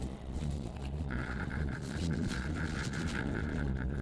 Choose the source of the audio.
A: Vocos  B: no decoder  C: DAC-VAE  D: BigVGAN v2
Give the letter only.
A